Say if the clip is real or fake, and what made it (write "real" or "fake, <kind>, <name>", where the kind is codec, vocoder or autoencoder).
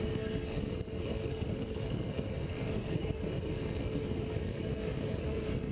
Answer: fake, codec, SNAC